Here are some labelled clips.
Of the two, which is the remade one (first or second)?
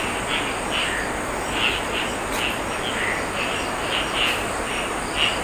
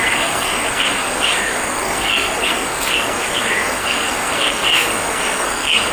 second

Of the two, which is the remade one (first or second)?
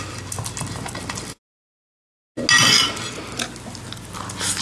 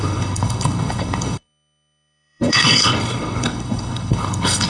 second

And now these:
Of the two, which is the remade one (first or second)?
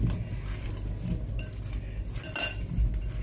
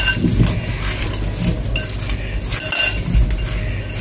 first